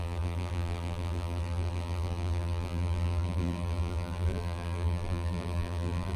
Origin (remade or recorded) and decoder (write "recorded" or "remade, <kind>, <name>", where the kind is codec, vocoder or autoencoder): remade, vocoder, BigVGAN v2